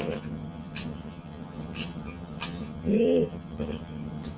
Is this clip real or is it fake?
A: fake